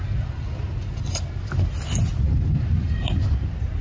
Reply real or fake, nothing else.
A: real